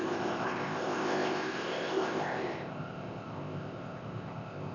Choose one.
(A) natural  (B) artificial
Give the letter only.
B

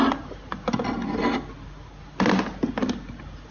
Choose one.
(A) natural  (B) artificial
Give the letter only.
A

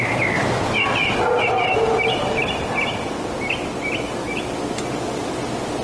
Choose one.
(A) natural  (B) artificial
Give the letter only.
A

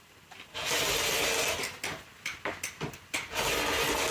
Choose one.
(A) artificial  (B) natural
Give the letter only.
B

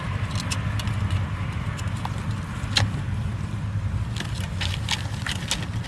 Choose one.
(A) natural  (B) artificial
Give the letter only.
A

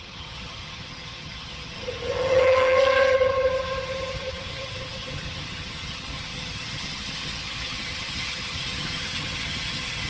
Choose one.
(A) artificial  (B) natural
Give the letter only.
A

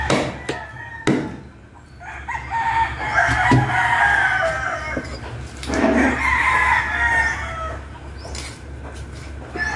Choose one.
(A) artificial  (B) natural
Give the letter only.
B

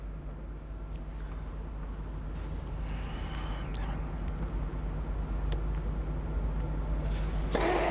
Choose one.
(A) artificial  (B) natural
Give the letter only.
B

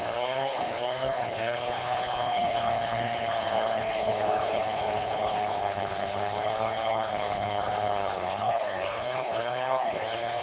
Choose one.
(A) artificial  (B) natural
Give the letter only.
A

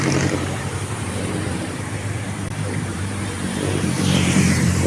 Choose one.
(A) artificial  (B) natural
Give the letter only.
A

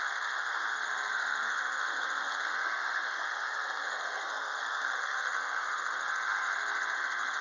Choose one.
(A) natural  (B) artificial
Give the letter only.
B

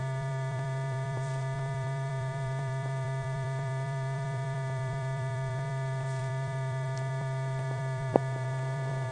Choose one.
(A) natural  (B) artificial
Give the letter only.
B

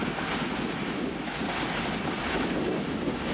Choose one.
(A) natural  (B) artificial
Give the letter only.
A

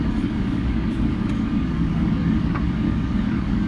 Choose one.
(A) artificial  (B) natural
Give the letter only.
A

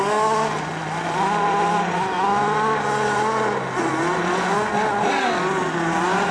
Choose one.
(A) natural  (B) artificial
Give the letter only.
A